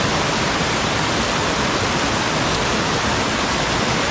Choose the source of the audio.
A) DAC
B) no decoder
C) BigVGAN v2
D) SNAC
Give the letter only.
B